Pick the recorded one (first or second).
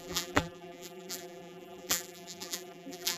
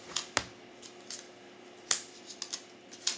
second